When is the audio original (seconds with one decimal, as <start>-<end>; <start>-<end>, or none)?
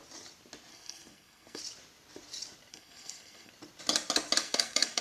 0.0-0.7; 1.6-2.7; 3.5-4.4